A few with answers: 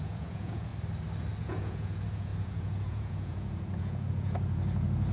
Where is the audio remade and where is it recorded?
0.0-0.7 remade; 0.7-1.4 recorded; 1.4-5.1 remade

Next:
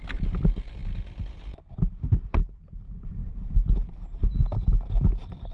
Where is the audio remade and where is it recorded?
0.0-5.5 recorded

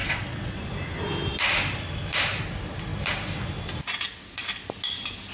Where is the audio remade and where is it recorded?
0.0-0.6 remade; 0.6-5.3 recorded

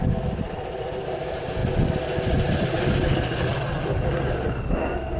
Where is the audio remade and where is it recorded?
0.0-5.2 recorded